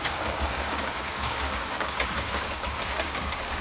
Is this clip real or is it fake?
fake